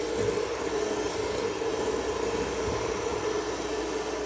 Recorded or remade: recorded